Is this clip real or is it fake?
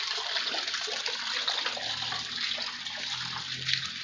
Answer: real